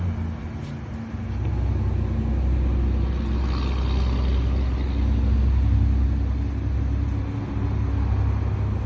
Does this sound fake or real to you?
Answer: real